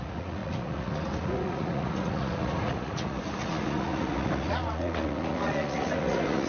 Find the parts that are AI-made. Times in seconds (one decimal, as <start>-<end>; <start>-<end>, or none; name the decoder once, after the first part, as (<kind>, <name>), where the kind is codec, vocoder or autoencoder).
0.0-6.5 (vocoder, Vocos)